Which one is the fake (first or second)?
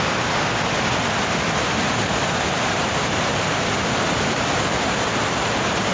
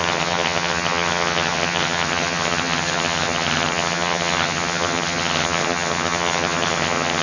second